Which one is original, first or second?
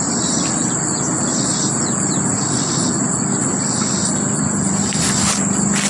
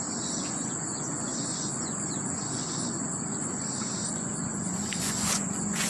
first